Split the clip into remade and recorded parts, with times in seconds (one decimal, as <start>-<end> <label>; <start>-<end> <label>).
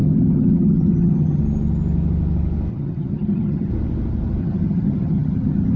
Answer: 0.0-1.4 remade; 1.4-2.7 recorded; 2.7-3.7 remade; 3.7-4.4 recorded; 4.4-5.8 remade